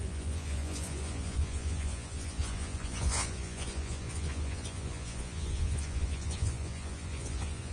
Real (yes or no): no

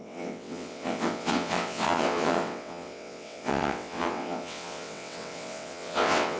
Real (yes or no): no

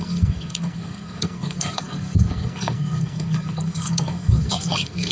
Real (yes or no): no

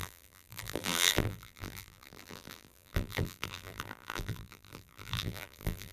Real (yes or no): no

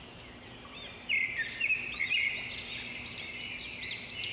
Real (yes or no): yes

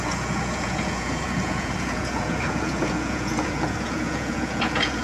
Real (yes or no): no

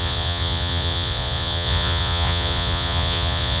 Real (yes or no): no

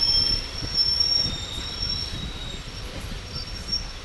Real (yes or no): no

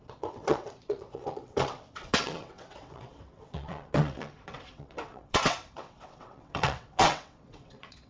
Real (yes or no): no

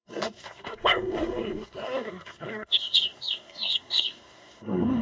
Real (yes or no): no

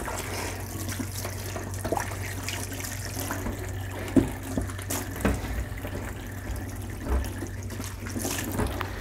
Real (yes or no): yes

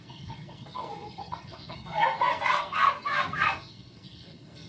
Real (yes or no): no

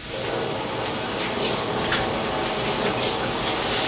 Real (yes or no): yes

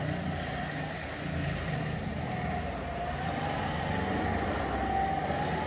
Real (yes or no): yes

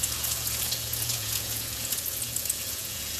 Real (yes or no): no